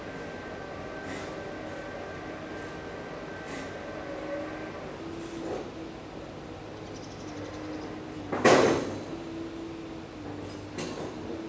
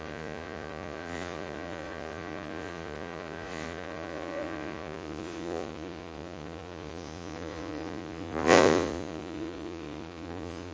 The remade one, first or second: second